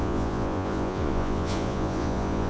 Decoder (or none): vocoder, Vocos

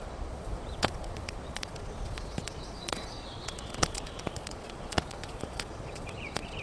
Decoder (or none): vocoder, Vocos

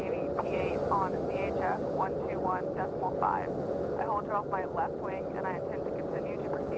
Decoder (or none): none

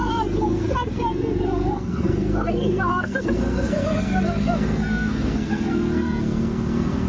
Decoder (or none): codec, SNAC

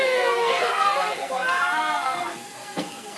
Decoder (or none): codec, SNAC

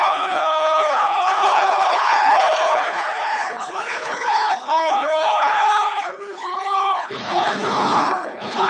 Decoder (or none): codec, HILCodec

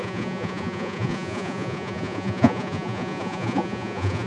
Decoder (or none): vocoder, Vocos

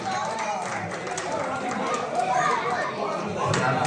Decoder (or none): none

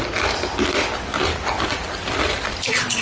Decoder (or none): vocoder, BigVGAN v2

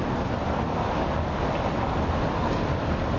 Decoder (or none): none